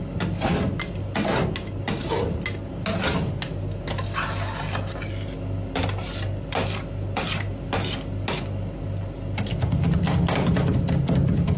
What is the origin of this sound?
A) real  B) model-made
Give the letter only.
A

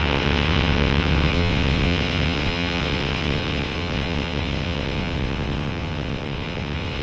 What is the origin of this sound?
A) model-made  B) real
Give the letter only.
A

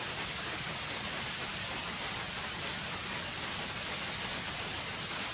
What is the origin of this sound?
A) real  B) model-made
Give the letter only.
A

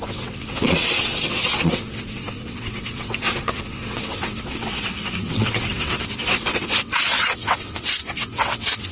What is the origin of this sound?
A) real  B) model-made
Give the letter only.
B